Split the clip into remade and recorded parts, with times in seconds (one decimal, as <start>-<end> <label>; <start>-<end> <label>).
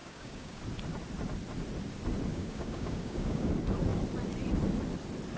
0.0-0.6 remade; 0.6-2.3 recorded; 2.3-3.5 remade; 3.5-5.4 recorded